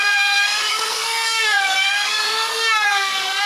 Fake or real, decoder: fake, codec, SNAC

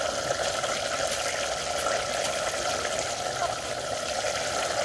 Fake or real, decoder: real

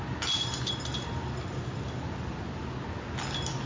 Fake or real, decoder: real